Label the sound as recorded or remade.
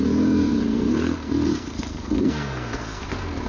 remade